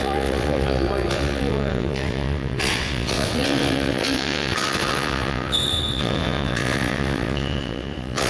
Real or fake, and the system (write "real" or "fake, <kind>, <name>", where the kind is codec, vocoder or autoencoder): fake, vocoder, WaveNeXt